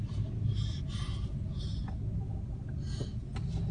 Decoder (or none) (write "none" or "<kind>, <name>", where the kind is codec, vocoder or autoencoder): none